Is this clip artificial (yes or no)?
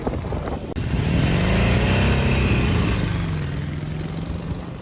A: no